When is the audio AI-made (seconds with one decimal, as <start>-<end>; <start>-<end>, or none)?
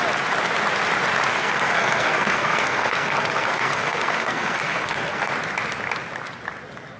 1.3-5.3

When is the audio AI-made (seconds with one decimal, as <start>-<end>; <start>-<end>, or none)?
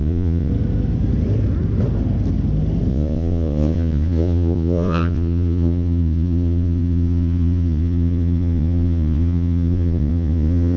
0.0-0.5; 2.9-10.8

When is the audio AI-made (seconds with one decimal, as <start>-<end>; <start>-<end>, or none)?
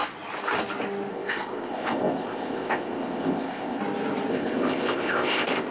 1.1-3.8; 4.3-5.7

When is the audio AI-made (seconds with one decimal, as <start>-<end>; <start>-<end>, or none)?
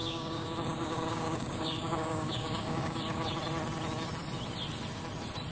0.0-3.3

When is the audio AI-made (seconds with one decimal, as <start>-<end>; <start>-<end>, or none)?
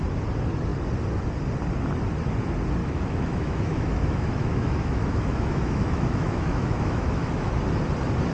2.8-7.5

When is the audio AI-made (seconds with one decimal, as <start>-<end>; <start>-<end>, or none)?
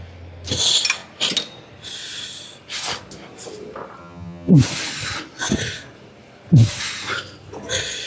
4.0-4.5